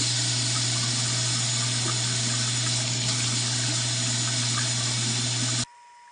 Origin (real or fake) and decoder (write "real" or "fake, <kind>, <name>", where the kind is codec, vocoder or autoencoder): real